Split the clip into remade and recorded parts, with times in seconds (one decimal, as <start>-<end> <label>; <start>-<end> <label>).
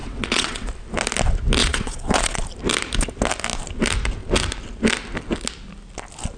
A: 0.0-0.7 remade; 0.7-1.6 recorded; 1.6-2.4 remade; 2.4-6.4 recorded